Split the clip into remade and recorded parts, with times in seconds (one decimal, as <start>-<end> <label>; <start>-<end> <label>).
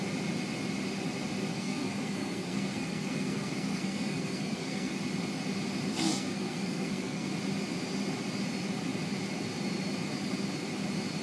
0.0-1.5 recorded; 1.5-5.0 remade; 5.0-5.9 recorded; 5.9-7.3 remade; 7.3-11.2 recorded